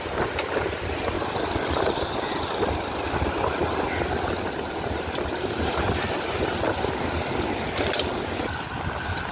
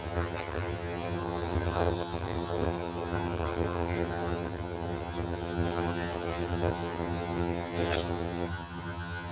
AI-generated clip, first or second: second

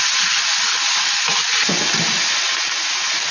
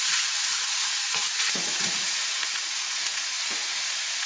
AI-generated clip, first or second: second